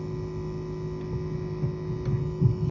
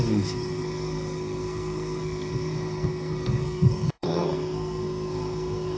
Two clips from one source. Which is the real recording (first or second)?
first